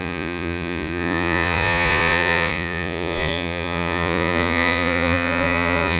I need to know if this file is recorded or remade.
remade